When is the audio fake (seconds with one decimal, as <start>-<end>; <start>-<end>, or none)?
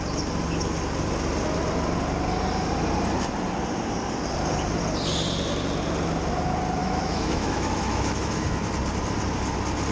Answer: 6.8-8.7